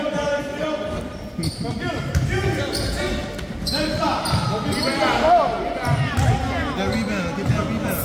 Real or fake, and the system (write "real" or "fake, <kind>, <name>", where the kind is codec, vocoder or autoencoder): real